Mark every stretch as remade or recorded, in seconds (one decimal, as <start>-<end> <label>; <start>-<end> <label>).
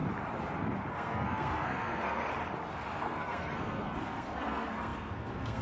0.0-0.9 recorded; 0.9-2.3 remade; 2.3-3.0 recorded; 3.0-5.6 remade